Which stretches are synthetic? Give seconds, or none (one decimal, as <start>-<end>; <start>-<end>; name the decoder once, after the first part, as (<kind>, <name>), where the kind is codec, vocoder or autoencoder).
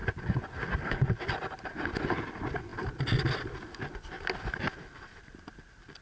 none